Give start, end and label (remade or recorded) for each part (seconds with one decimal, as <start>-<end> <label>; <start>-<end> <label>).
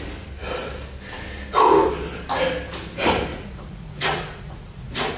0.0-3.3 recorded; 3.3-5.2 remade